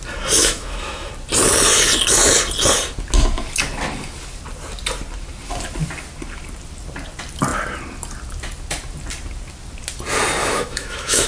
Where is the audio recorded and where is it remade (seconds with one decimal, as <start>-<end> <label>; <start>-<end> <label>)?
0.0-0.4 recorded; 0.4-1.1 remade; 1.1-10.4 recorded; 10.4-11.3 remade